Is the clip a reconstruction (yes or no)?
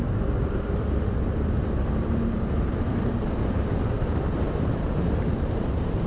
yes